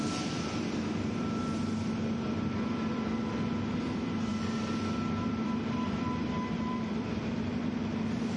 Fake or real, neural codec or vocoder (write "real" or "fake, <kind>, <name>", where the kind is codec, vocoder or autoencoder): fake, vocoder, BigVGAN v2